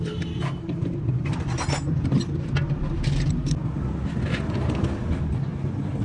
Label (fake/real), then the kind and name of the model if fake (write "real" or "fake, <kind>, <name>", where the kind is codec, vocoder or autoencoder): real